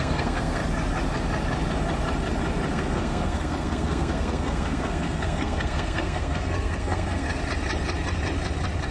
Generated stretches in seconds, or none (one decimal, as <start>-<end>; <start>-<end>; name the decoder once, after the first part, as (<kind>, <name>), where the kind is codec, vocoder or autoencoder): 0.0-0.6 (codec, SNAC); 2.7-7.4